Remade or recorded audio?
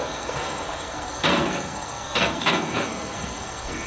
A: remade